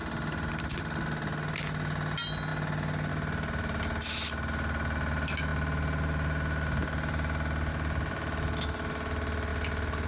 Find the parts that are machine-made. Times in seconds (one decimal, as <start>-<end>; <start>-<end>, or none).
none